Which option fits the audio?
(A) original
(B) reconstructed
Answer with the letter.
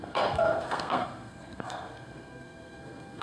B